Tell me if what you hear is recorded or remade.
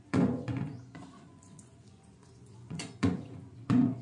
remade